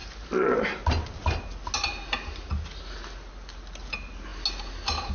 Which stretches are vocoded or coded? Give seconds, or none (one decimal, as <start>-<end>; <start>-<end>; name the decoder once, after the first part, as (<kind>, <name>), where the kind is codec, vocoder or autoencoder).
none